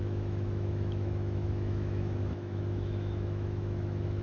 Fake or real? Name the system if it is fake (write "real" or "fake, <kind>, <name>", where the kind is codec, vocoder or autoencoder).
fake, autoencoder, DAC-VAE